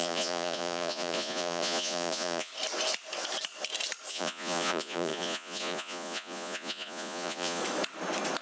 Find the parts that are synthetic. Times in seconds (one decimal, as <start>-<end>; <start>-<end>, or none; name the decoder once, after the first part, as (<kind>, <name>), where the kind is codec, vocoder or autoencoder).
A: 0.0-2.5 (vocoder, Vocos); 4.1-7.6